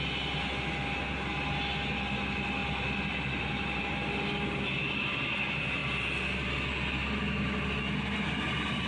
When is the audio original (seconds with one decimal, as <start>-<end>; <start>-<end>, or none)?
0.0-8.9